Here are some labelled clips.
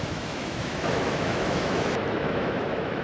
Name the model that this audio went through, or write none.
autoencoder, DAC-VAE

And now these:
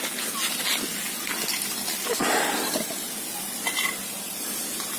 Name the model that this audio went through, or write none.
none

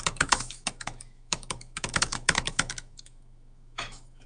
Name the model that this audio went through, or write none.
autoencoder, DAC-VAE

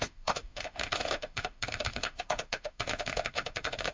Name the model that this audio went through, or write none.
autoencoder, DAC-VAE